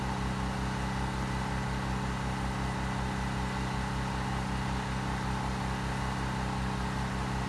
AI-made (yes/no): no